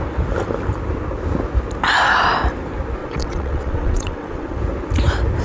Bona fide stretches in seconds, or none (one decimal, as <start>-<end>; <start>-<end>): 0.0-3.0; 4.6-5.4